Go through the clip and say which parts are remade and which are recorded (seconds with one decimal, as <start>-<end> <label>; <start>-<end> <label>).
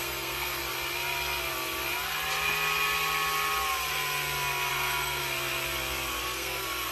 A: 0.0-0.6 remade; 0.6-4.7 recorded; 4.7-5.2 remade; 5.2-6.2 recorded; 6.2-6.9 remade